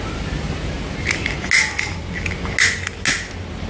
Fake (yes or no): no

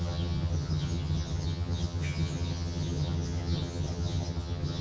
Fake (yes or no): yes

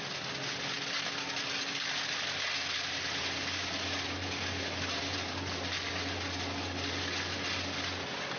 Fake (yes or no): no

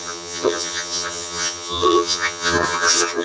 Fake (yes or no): yes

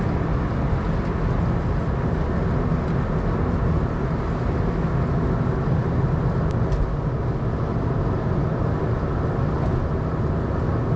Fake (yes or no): no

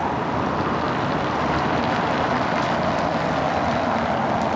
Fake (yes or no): no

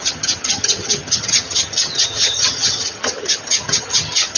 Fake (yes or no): yes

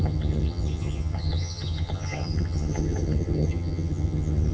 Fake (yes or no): yes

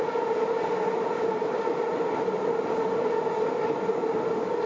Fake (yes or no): no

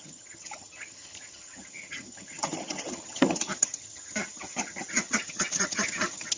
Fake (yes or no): yes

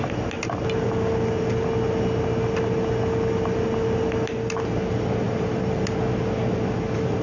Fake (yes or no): no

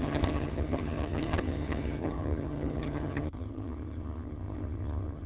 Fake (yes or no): yes